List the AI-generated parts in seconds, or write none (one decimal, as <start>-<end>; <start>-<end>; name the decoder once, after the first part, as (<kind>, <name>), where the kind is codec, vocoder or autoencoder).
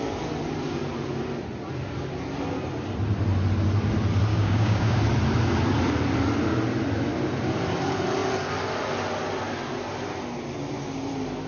4.3-5.0 (codec, DAC)